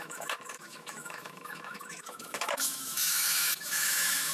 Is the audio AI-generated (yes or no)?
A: yes